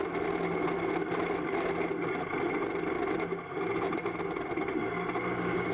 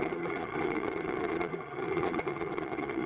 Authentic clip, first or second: first